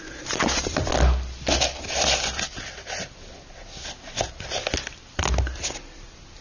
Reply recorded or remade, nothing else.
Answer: recorded